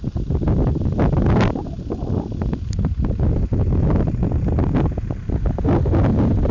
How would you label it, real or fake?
real